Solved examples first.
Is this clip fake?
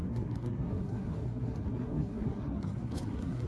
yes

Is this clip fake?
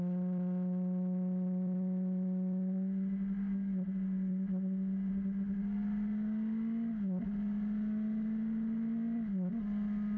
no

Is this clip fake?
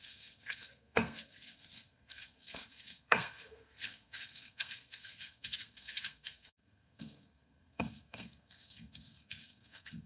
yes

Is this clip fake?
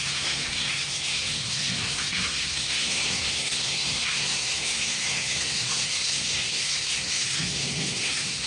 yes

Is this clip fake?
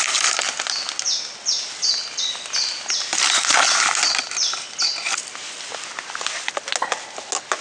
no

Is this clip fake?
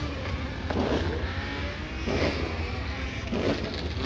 no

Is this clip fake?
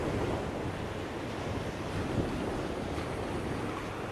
no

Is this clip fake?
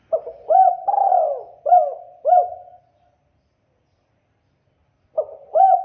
no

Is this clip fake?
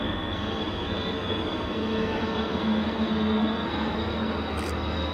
yes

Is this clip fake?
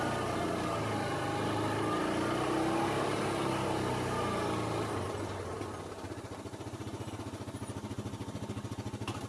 no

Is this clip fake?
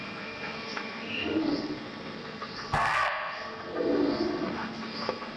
yes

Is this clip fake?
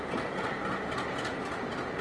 no